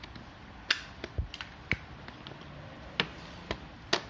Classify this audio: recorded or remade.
recorded